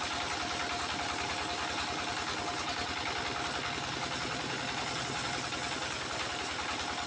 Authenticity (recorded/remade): recorded